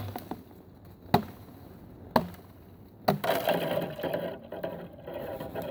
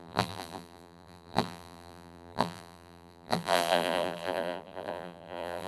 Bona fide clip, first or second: first